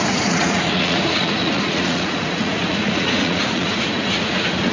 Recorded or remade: remade